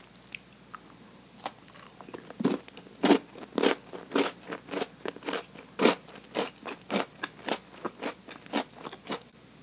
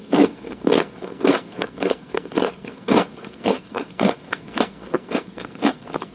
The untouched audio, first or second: first